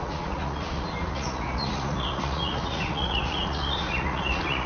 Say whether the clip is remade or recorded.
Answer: remade